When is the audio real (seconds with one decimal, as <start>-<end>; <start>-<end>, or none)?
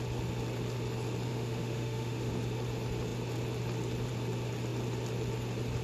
0.0-1.3; 2.3-5.8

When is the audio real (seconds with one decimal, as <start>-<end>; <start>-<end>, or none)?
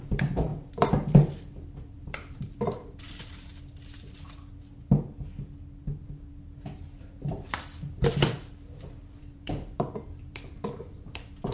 3.5-7.0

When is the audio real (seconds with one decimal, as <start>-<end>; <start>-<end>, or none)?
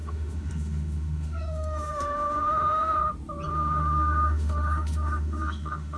3.0-3.5